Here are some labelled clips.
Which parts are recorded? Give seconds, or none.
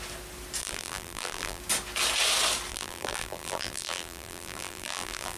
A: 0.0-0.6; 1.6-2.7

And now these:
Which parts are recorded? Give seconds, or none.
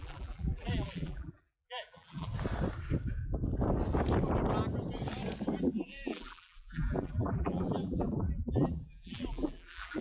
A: 2.3-5.6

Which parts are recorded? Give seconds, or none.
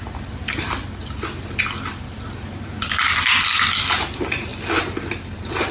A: 0.0-5.7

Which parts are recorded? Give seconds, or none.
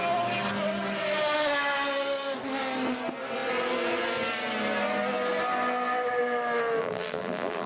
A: 0.0-6.8